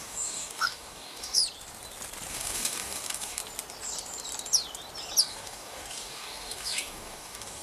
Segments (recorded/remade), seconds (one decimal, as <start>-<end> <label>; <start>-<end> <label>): 0.0-1.4 remade; 1.4-2.3 recorded; 2.3-3.4 remade; 3.4-5.2 recorded; 5.2-7.6 remade